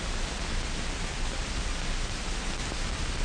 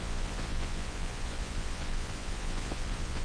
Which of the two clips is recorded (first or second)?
first